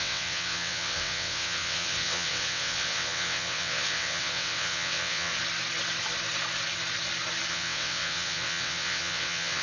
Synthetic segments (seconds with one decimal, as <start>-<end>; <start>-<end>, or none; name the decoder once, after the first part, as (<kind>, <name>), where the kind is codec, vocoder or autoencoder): 0.0-5.3 (vocoder, WaveNeXt); 7.5-9.6